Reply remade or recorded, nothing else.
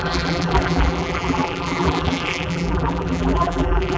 remade